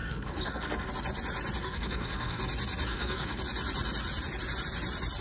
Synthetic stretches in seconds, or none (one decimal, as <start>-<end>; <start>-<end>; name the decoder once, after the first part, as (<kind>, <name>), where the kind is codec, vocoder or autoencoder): 0.0-0.9 (codec, SNAC); 1.6-2.4; 2.9-3.4